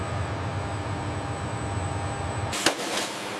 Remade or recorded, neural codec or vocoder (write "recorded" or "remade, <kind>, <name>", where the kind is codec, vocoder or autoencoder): recorded